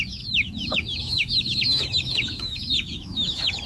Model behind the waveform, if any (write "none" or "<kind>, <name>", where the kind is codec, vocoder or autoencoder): autoencoder, DAC-VAE